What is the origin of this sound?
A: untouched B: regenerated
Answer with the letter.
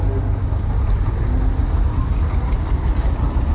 A